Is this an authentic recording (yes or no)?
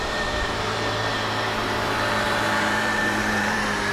no